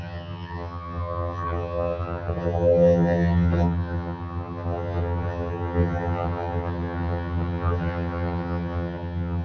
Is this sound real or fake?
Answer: fake